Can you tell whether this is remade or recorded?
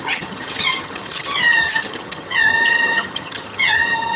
remade